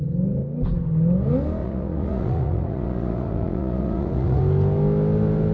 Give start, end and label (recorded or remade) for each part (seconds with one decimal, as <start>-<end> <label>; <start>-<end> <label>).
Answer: 0.0-1.6 recorded; 1.6-4.4 remade; 4.4-5.5 recorded